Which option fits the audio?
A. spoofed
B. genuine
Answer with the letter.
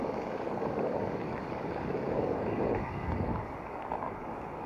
A